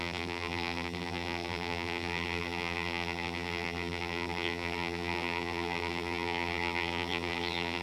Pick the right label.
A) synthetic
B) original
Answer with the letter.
A